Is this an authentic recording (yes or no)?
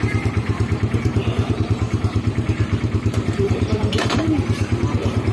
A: no